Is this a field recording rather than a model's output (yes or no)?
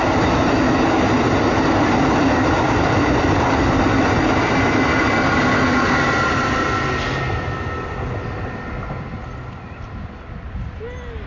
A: yes